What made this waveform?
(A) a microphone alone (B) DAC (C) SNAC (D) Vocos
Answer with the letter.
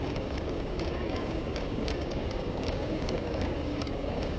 B